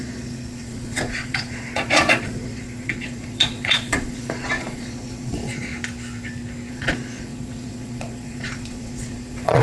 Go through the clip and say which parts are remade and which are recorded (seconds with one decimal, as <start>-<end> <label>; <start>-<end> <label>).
0.0-5.7 remade; 5.7-6.7 recorded; 6.7-9.6 remade